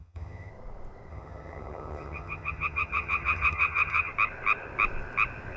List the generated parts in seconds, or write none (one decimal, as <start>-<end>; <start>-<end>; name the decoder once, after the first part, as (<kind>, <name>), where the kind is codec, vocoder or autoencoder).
0.0-0.5 (vocoder, HiFi-GAN); 1.1-4.1